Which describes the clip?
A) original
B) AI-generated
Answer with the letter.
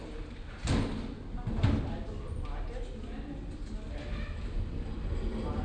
A